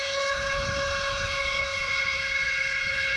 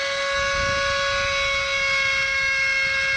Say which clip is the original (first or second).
second